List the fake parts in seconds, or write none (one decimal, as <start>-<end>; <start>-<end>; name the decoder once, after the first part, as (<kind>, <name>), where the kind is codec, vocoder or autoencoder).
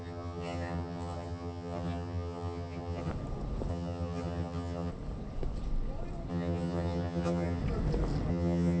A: 0.0-3.1 (vocoder, HiFi-GAN); 3.7-4.9; 6.3-7.6; 8.3-8.8